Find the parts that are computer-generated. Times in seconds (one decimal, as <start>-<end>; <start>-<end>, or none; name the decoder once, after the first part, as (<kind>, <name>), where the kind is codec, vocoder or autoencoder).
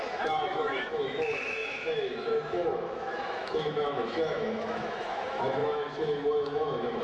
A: 0.0-7.0 (autoencoder, DAC-VAE)